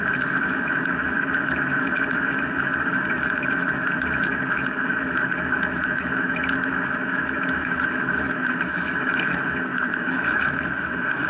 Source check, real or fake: fake